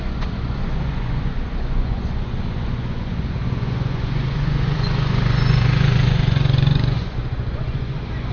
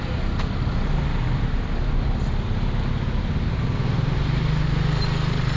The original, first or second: second